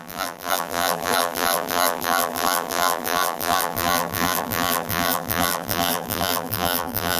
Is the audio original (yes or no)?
no